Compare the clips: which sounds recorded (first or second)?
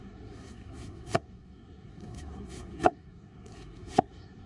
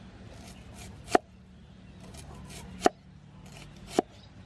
second